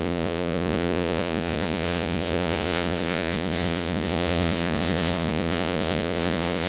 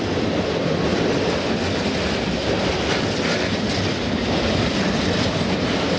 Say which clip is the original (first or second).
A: second